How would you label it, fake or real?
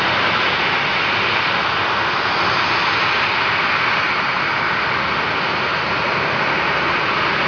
real